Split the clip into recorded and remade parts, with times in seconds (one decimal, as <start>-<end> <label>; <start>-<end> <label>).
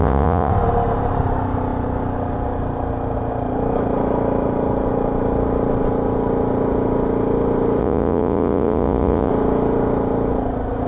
0.0-0.5 remade; 0.5-7.8 recorded; 7.8-9.3 remade; 9.3-10.9 recorded